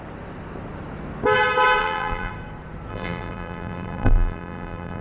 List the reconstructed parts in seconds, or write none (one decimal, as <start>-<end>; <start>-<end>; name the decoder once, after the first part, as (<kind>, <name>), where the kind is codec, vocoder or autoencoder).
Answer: 1.8-2.3 (vocoder, BigVGAN v2); 2.9-5.0